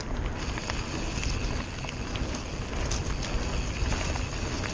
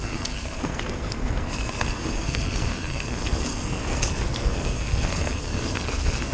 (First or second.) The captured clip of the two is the first